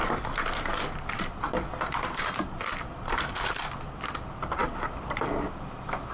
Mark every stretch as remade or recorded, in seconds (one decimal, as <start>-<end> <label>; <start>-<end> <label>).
0.0-6.1 recorded